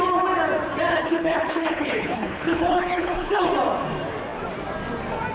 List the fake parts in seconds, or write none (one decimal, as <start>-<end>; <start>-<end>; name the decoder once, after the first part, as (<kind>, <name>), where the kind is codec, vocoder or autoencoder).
0.9-3.5 (codec, HILCodec)

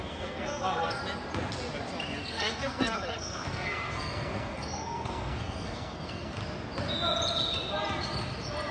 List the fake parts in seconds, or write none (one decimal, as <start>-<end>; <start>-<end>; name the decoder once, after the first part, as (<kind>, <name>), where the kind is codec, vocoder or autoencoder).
0.0-1.0 (codec, SNAC); 2.2-6.4

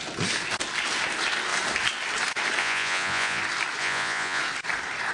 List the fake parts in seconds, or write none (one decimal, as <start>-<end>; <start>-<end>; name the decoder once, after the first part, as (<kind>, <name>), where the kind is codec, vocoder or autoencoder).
2.6-3.4 (vocoder, Vocos); 3.8-4.4

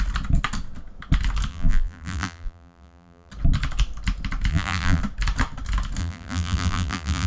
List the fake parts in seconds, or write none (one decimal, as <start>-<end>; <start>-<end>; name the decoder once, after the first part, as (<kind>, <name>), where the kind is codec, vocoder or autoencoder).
1.5-3.3 (vocoder, BigVGAN v2); 4.5-5.0; 6.0-7.3